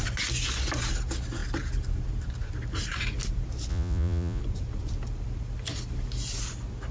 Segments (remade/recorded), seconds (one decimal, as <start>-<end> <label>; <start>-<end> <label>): 0.0-3.7 recorded; 3.7-4.4 remade; 4.4-6.9 recorded